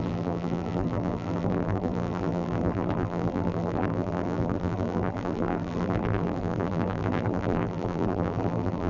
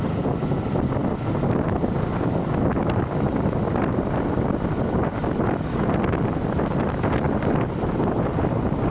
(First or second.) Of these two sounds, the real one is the second